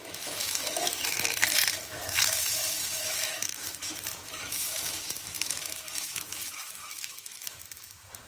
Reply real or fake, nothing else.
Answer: fake